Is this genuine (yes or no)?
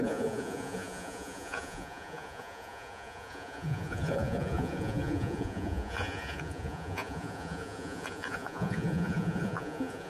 no